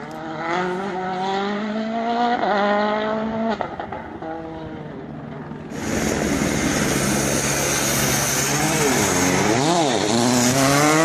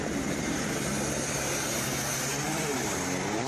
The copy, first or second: second